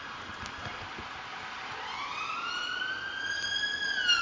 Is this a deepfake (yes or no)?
no